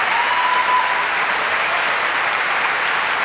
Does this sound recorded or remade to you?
recorded